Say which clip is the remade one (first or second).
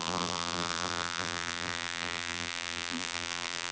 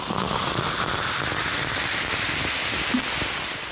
first